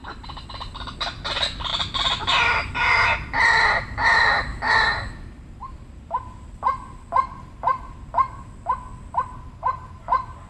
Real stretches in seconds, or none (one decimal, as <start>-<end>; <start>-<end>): 0.0-1.7; 2.7-4.5; 8.2-10.5